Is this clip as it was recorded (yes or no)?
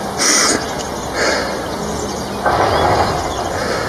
yes